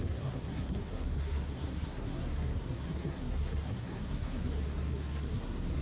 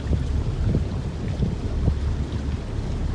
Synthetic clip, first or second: first